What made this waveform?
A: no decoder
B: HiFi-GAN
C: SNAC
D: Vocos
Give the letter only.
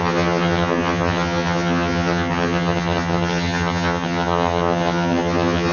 B